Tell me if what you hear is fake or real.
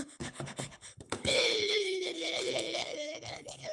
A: fake